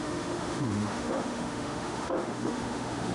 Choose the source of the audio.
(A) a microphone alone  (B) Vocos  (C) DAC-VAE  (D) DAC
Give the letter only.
C